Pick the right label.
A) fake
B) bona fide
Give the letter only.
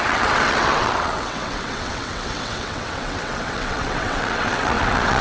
A